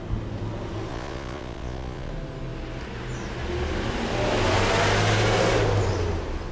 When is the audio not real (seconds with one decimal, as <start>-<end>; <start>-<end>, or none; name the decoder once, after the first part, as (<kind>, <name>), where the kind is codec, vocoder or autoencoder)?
0.9-2.1 (vocoder, Vocos)